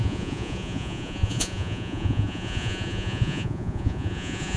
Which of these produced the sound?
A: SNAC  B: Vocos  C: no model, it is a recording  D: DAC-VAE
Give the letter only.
B